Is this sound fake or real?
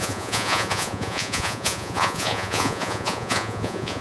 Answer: fake